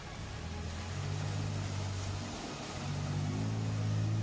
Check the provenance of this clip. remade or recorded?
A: recorded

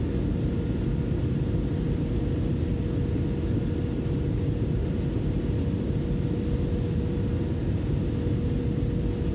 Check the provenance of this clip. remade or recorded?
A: recorded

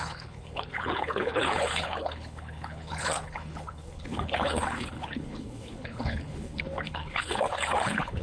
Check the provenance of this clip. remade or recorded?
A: remade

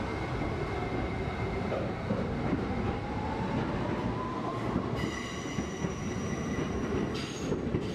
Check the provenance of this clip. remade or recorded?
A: recorded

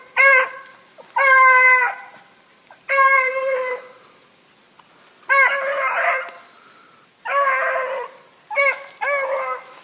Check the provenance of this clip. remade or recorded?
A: recorded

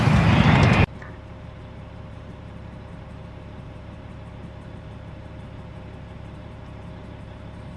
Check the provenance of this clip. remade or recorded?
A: remade